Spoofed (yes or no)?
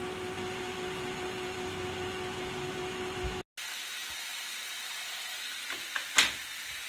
no